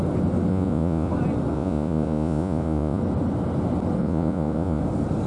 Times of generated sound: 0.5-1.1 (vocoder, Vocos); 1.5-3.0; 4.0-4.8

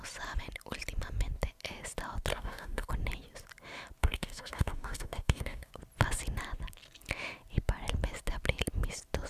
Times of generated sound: 2.3-2.9 (codec, DAC); 4.0-5.7